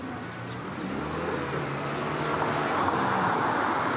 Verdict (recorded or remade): recorded